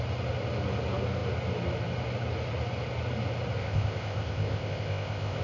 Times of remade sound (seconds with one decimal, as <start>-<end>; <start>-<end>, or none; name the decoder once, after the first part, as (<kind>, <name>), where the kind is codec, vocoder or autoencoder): 3.6-5.4 (codec, ZipCodec)